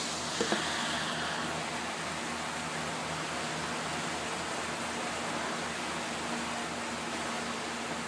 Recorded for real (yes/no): yes